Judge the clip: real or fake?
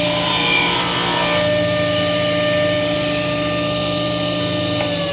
real